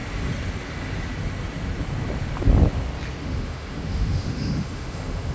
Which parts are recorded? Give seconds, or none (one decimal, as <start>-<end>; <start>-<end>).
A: 0.0-3.2